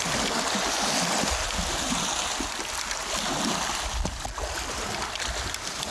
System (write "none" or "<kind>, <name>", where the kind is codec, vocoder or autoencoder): none